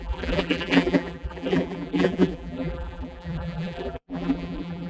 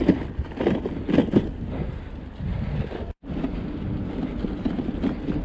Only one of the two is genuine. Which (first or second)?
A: second